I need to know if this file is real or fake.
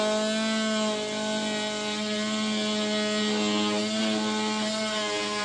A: real